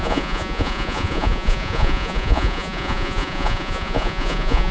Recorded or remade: remade